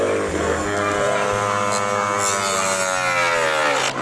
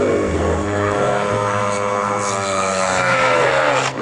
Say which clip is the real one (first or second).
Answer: first